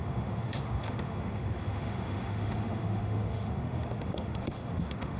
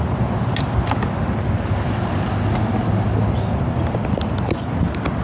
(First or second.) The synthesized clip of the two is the first